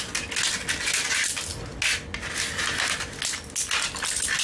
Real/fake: real